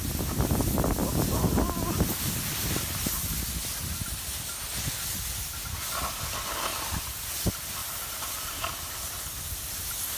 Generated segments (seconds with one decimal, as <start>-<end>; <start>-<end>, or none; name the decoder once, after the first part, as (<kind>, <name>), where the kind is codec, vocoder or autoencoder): 6.7-7.3 (vocoder, BigVGAN v2); 7.8-9.2